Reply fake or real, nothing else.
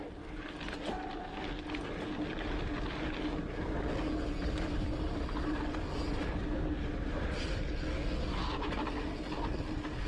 real